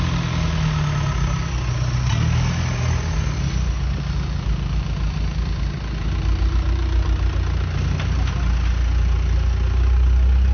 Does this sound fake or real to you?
real